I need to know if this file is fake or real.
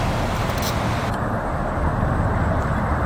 real